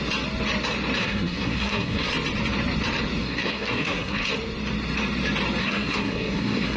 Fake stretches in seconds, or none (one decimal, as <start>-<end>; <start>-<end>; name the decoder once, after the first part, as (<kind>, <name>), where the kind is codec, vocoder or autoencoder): 1.0-2.1 (codec, SNAC); 3.2-4.3; 5.6-6.8